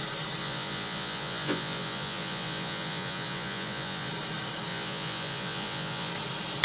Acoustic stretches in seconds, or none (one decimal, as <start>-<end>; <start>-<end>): 0.0-0.4; 4.1-4.7; 6.1-6.6